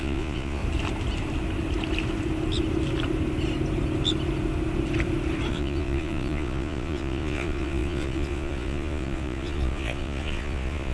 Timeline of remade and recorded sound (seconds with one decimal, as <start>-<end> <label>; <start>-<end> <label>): 0.0-0.6 remade; 0.6-5.5 recorded; 5.5-10.9 remade